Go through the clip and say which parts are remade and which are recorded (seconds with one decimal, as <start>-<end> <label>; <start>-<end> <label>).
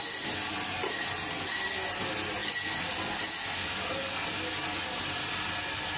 0.0-6.0 recorded